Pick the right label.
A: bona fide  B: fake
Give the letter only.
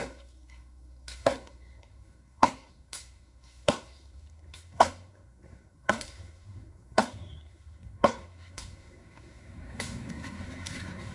B